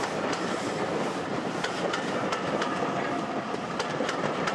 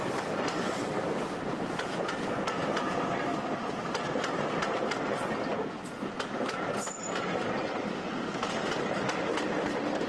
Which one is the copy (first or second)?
first